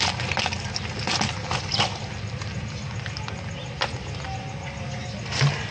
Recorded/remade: recorded